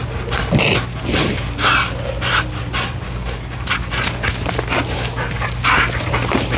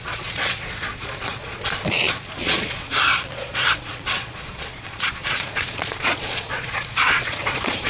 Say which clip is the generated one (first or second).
second